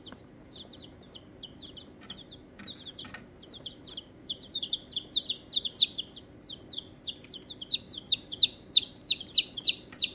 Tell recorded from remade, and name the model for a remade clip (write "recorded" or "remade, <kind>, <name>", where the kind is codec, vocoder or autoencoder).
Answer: remade, vocoder, BigVGAN v2